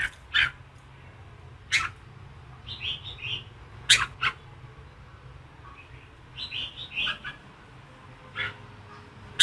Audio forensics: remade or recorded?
recorded